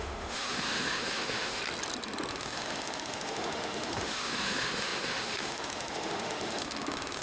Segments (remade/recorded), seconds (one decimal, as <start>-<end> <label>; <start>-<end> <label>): 0.0-1.6 remade; 1.6-2.3 recorded; 2.3-7.2 remade